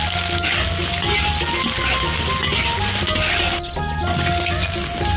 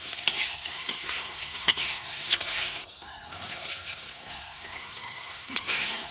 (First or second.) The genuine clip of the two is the first